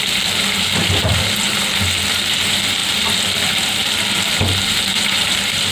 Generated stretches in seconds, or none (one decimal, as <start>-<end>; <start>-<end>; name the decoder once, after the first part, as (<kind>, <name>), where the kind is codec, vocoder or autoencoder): 0.0-5.7 (vocoder, BigVGAN v2)